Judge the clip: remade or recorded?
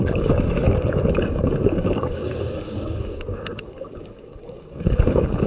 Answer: remade